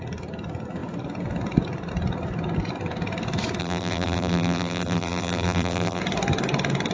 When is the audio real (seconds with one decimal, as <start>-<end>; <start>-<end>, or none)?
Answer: 0.0-3.6; 6.0-6.9